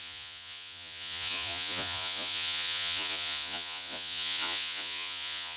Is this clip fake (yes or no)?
yes